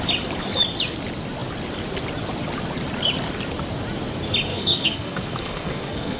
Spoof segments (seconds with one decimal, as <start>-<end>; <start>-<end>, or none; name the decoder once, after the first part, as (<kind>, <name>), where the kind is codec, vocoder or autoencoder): 4.5-6.2 (codec, SNAC)